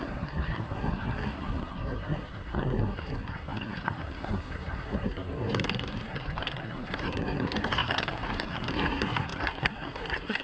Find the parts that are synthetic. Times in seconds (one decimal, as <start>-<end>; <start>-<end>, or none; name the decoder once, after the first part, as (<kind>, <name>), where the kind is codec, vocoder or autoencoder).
0.0-10.4 (codec, SNAC)